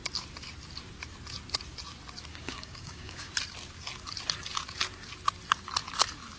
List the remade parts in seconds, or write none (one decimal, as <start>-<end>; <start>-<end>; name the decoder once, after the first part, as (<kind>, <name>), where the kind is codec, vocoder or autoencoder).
2.3-3.3 (codec, DAC)